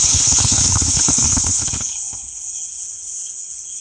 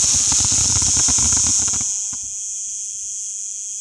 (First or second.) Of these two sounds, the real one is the second